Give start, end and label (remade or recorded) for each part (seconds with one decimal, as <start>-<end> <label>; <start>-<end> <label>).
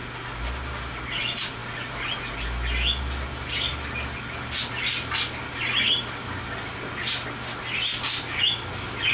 0.0-9.1 recorded